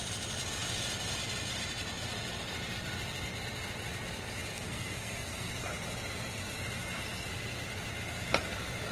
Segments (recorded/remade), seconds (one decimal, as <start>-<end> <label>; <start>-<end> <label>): 0.0-4.5 recorded; 4.5-5.5 remade; 5.5-8.9 recorded